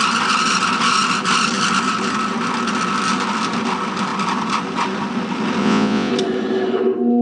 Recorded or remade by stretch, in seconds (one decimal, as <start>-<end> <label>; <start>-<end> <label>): 0.0-5.6 recorded; 5.6-6.1 remade; 6.1-7.2 recorded